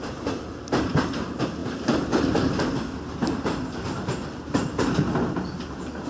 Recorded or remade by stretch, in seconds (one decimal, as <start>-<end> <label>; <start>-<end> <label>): 0.0-1.6 remade; 1.6-5.3 recorded; 5.3-6.1 remade